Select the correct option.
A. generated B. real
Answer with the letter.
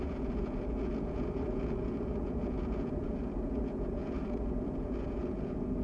A